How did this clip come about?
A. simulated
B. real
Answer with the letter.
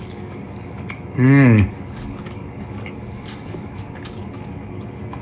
A